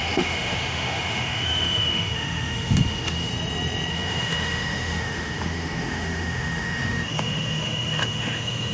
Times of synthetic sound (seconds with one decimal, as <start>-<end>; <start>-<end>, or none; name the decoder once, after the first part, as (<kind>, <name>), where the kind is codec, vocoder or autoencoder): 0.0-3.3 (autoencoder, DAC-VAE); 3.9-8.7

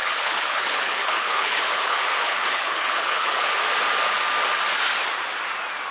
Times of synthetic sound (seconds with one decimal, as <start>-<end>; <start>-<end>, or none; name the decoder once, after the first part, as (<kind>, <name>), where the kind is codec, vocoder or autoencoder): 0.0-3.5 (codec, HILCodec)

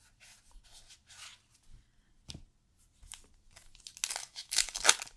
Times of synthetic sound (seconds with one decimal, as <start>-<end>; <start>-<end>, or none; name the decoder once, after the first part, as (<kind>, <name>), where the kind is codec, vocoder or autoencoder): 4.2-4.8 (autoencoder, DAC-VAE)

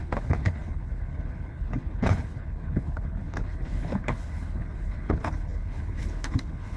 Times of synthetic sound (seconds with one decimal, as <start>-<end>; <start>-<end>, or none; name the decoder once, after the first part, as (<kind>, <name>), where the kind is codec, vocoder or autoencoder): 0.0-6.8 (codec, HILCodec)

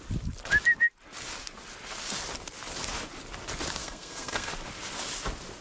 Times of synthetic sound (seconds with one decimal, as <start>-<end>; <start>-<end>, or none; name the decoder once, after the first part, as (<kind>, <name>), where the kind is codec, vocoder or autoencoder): 3.8-4.5 (codec, SNAC)

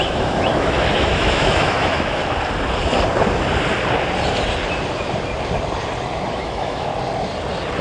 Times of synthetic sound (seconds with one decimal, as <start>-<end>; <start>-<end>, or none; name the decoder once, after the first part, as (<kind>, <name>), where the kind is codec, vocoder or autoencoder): 0.0-2.2 (autoencoder, DAC-VAE); 6.3-6.9